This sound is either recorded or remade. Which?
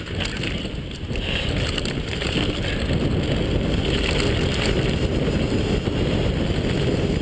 recorded